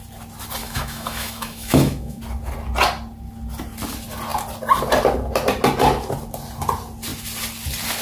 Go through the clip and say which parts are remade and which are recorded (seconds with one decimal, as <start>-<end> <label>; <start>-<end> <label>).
0.0-0.6 recorded; 0.6-2.2 remade; 2.2-8.0 recorded